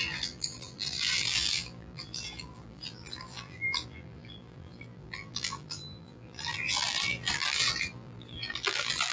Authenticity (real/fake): fake